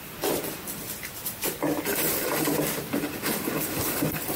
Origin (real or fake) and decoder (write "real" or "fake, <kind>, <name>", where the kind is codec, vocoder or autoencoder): real